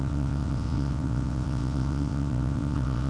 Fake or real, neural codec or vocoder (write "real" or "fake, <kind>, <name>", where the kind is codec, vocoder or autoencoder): fake, vocoder, WaveNeXt